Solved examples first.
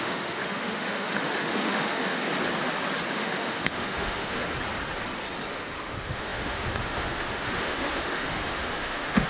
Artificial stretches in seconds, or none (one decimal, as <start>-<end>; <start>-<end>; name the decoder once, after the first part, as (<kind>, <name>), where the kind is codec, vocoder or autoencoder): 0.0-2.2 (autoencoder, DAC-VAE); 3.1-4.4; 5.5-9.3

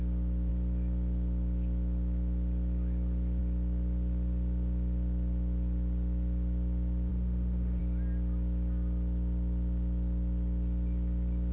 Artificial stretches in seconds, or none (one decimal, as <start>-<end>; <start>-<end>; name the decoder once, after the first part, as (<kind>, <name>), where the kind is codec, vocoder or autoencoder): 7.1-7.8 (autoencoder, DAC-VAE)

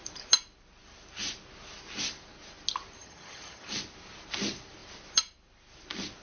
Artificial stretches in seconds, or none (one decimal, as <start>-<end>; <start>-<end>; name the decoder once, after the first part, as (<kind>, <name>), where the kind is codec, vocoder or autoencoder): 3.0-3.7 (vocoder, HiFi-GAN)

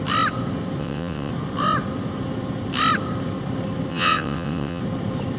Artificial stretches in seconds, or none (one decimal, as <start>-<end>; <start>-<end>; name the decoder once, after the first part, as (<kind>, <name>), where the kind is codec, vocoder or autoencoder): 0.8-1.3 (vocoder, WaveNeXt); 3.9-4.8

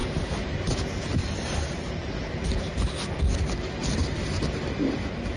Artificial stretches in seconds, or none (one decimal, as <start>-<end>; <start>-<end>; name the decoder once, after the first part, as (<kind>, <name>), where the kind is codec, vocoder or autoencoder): 0.0-0.7 (vocoder, BigVGAN v2); 1.2-2.1

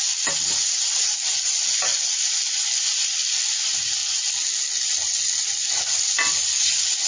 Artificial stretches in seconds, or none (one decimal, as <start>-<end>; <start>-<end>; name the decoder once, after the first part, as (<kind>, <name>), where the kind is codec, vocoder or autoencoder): none

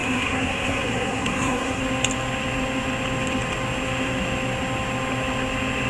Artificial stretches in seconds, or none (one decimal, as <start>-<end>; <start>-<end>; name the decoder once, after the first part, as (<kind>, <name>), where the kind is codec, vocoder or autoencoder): 0.0-1.8 (codec, SNAC)